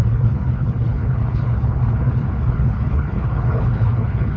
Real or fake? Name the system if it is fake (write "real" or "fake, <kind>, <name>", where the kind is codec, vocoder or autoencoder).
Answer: fake, codec, HILCodec